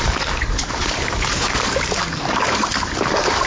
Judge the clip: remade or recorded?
remade